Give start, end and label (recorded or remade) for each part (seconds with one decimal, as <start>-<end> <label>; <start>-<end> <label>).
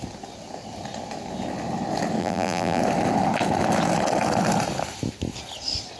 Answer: 0.0-2.2 recorded; 2.2-2.8 remade; 2.8-6.0 recorded